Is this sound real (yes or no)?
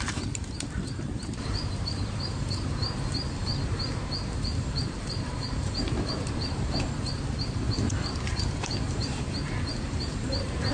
no